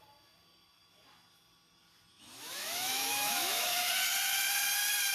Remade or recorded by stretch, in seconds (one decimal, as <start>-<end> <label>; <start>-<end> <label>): 0.0-2.1 recorded; 2.1-3.9 remade; 3.9-5.1 recorded